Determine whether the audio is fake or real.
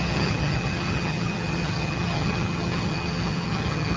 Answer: fake